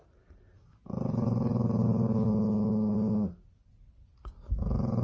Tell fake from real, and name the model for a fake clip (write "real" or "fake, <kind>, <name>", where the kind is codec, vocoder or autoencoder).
real